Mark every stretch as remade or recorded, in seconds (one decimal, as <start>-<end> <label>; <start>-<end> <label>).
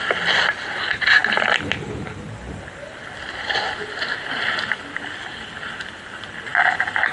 0.0-7.1 recorded